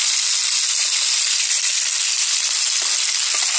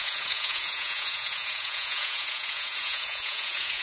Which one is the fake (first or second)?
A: second